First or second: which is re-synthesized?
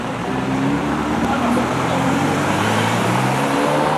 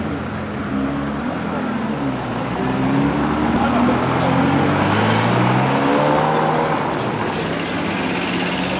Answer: first